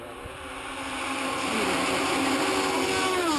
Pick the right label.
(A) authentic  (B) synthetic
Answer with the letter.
A